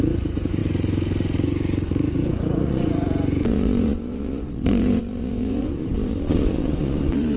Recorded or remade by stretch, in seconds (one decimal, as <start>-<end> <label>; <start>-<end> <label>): 0.0-7.4 remade